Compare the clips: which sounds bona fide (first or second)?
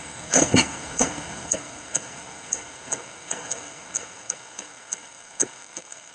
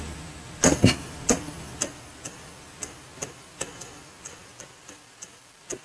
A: second